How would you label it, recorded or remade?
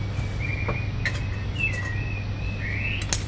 recorded